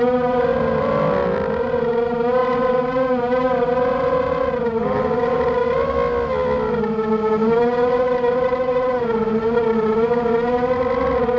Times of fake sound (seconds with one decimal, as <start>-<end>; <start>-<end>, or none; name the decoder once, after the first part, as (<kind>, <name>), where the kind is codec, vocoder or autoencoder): 0.5-1.8 (vocoder, BigVGAN v2)